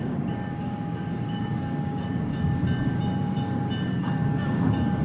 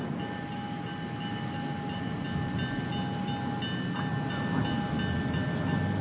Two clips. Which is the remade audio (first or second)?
first